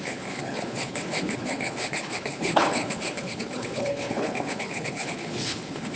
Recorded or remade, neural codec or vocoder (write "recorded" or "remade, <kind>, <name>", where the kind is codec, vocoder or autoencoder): remade, codec, HILCodec